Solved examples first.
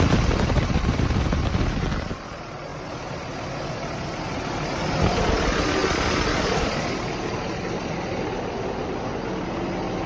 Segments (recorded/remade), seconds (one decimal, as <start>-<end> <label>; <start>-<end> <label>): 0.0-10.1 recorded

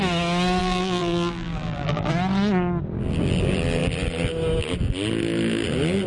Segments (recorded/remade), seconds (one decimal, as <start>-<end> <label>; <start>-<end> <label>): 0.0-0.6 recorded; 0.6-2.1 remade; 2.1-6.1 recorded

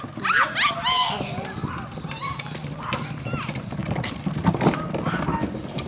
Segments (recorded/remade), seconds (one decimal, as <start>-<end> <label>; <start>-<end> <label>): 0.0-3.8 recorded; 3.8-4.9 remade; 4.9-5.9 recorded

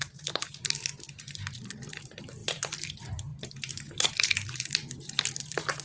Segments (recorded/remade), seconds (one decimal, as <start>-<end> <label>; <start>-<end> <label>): 0.0-5.8 remade

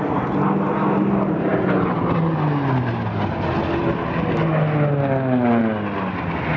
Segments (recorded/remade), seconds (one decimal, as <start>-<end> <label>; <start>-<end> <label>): 0.0-6.6 recorded

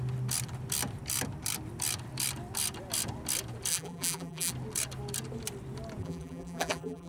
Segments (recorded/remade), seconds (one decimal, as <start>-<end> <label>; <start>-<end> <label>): 0.0-3.7 recorded; 3.7-4.5 remade; 4.5-6.0 recorded; 6.0-7.1 remade